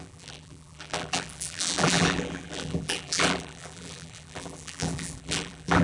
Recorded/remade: remade